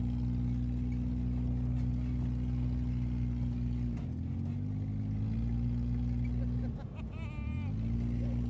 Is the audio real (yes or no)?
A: yes